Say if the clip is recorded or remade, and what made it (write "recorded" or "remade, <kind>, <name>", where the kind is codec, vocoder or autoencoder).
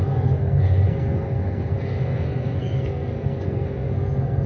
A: remade, codec, SNAC